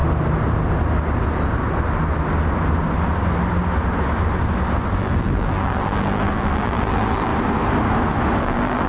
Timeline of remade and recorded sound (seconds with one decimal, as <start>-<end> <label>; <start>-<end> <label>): 0.0-5.0 recorded; 5.0-7.3 remade; 7.3-8.4 recorded; 8.4-8.9 remade